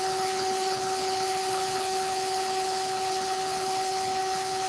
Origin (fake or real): fake